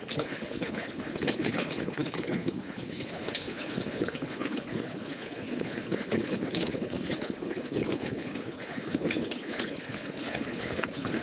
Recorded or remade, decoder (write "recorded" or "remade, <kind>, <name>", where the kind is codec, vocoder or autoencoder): remade, codec, HILCodec